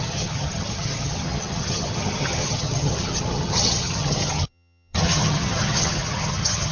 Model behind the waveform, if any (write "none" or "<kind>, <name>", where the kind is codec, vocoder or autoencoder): vocoder, HiFi-GAN